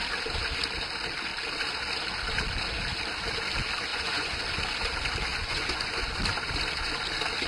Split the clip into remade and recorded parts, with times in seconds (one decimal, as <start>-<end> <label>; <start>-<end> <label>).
0.0-3.9 recorded; 3.9-4.4 remade; 4.4-5.3 recorded; 5.3-6.1 remade; 6.1-7.5 recorded